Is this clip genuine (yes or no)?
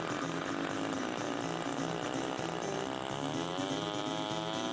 yes